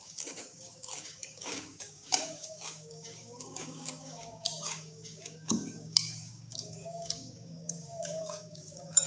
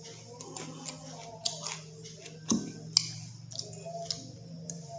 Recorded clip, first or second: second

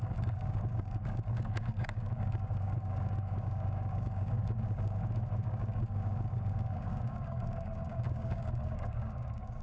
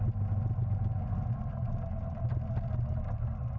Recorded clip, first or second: second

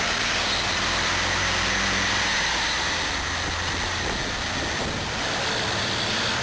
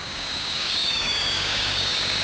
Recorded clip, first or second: first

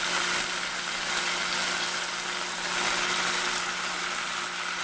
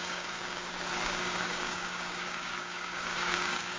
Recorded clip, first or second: first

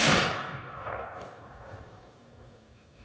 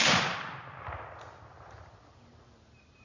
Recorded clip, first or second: second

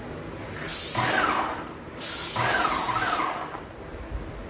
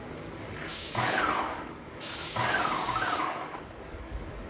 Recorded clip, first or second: first